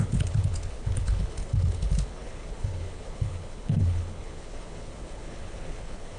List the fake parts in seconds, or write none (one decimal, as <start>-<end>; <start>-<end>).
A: 0.0-6.2